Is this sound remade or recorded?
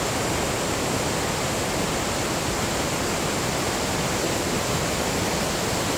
recorded